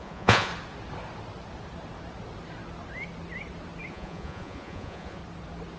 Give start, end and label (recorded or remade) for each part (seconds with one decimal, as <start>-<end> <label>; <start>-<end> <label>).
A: 0.0-0.5 remade; 0.5-3.9 recorded; 3.9-5.2 remade; 5.2-5.8 recorded